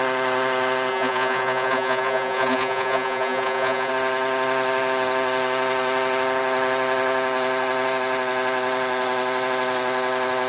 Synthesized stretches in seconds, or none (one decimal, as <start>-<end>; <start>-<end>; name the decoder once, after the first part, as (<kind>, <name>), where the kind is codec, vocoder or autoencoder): 0.9-3.9 (vocoder, Vocos)